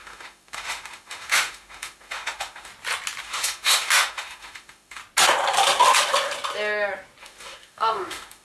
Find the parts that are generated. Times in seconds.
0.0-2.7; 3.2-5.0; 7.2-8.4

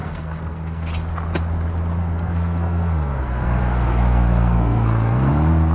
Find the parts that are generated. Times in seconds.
0.0-0.9; 2.0-5.3

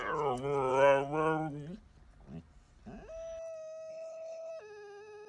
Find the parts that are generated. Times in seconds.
3.9-4.5

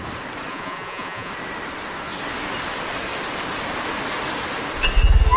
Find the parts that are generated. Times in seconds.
0.5-1.3